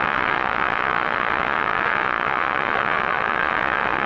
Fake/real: fake